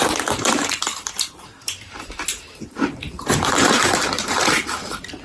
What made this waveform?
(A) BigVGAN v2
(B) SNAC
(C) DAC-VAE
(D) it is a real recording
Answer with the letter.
A